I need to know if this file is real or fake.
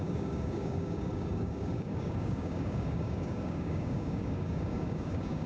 fake